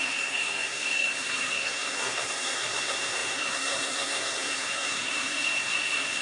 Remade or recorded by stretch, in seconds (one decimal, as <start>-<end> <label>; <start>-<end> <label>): 0.0-6.2 remade